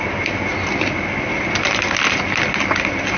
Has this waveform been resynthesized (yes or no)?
no